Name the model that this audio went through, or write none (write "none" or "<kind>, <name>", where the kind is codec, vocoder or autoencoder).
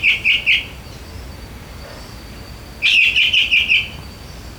none